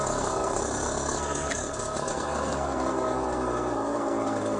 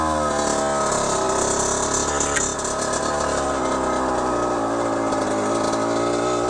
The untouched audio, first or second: second